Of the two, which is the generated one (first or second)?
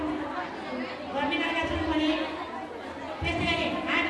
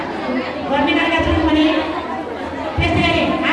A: second